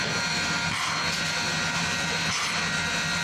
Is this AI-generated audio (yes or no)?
no